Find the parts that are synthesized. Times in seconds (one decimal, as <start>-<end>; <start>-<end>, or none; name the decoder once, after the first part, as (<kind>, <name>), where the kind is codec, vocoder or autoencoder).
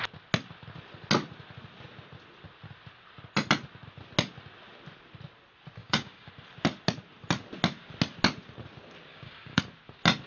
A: 5.8-6.3 (codec, DAC); 9.1-9.6